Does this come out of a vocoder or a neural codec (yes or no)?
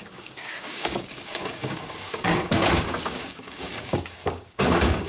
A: yes